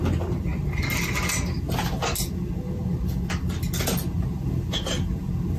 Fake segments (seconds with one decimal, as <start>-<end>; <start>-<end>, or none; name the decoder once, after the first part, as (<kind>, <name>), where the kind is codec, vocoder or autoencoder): none